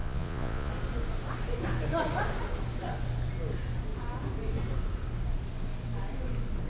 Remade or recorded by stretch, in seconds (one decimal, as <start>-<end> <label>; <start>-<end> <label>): 0.0-0.7 remade; 0.7-6.7 recorded